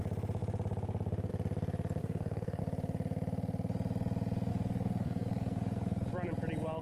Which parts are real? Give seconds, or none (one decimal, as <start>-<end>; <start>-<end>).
0.0-2.0; 2.6-4.5; 6.1-6.8